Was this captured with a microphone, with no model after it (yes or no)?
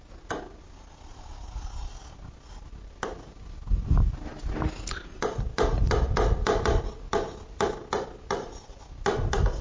yes